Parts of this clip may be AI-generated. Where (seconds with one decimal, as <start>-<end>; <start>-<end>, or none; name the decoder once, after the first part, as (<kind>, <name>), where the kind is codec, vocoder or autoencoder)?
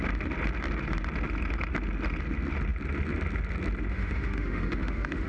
3.9-5.3 (autoencoder, DAC-VAE)